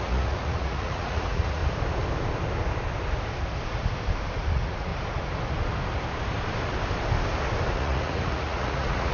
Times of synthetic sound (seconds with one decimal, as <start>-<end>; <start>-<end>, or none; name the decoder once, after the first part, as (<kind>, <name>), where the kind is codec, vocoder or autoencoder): 0.0-1.6 (vocoder, Vocos); 4.5-4.9; 7.7-9.1